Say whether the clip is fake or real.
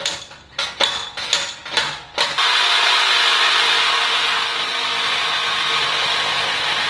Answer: real